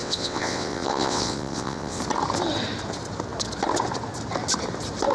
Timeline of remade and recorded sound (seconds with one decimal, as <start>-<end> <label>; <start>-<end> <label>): 0.0-2.0 remade; 2.0-5.1 recorded